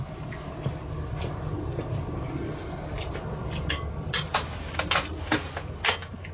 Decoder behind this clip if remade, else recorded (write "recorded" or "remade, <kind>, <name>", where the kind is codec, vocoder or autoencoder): recorded